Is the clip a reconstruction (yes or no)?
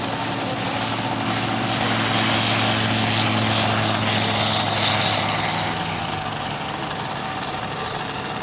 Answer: no